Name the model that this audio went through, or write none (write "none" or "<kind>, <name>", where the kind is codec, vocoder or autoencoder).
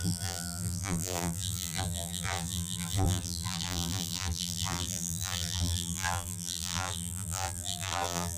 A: vocoder, BigVGAN v2